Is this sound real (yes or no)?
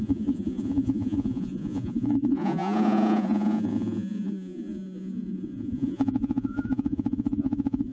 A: no